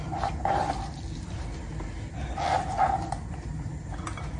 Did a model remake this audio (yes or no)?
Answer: no